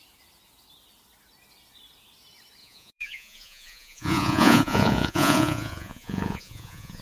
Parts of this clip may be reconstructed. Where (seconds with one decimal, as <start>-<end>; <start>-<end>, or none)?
2.6-7.0